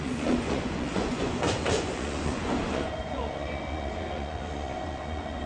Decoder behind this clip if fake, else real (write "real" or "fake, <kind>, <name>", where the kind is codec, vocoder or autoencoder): fake, vocoder, Vocos